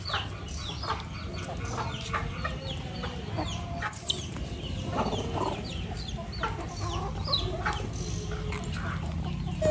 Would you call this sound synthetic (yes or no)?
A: no